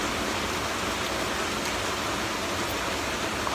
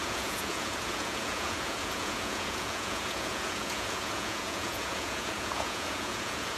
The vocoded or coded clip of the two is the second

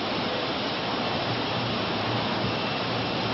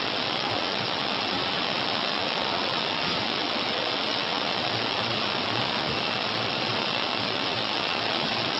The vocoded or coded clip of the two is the second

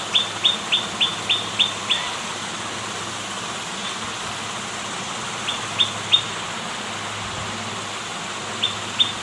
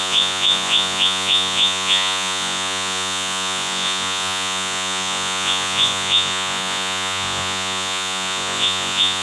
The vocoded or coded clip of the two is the second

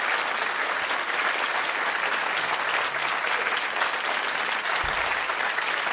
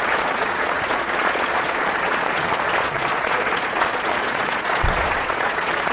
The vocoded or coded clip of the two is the second